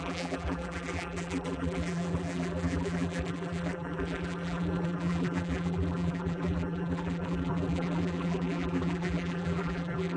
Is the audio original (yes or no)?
no